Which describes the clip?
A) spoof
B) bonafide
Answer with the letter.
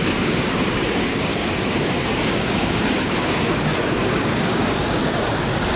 A